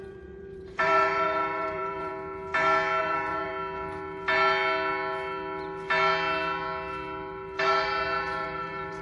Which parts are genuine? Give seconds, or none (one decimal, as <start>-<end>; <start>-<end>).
2.1-3.0; 3.5-7.6